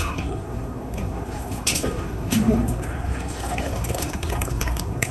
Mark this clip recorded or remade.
remade